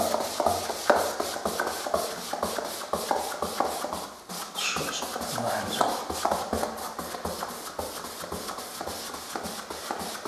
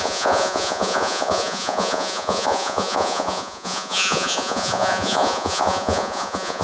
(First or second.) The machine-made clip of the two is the second